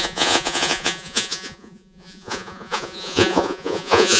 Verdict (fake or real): fake